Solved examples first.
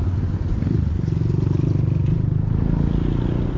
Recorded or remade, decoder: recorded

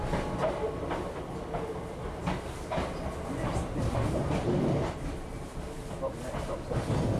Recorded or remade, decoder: recorded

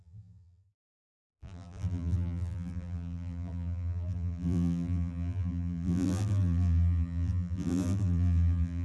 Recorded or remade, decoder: remade, vocoder, BigVGAN v2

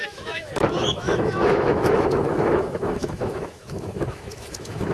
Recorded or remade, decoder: remade, autoencoder, DAC-VAE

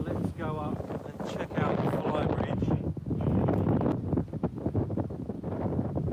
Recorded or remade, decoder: recorded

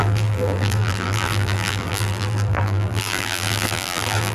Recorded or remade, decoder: remade, vocoder, BigVGAN v2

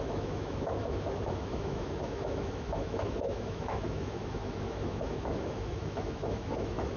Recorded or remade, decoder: remade, autoencoder, DAC-VAE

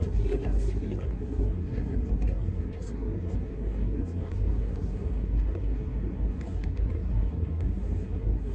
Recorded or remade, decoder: remade, codec, SNAC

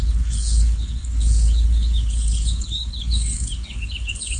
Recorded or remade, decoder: remade, codec, HILCodec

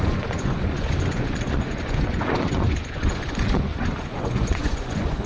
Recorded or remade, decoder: remade, vocoder, Vocos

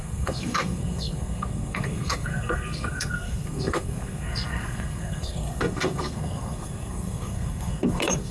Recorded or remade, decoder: remade, codec, SNAC